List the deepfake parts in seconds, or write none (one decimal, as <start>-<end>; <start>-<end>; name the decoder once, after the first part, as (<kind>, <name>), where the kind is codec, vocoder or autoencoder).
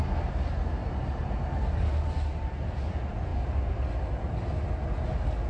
none